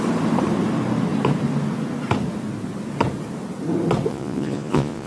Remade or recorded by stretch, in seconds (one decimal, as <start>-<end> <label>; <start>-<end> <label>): 0.0-4.1 recorded; 4.1-5.1 remade